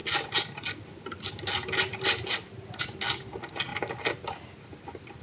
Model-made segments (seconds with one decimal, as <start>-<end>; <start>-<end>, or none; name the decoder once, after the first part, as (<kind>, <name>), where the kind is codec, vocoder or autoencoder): none